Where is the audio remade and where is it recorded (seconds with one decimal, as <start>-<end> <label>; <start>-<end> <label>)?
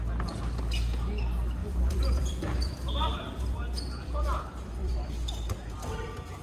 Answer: 0.0-1.6 recorded; 1.6-5.1 remade; 5.1-6.4 recorded